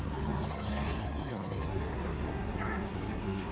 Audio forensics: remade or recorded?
remade